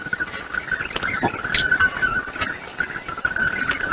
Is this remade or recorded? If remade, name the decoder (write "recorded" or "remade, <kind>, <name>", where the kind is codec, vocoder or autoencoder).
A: recorded